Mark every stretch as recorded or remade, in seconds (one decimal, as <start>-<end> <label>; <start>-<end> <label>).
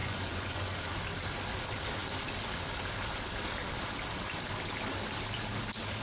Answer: 0.0-0.8 remade; 0.8-6.0 recorded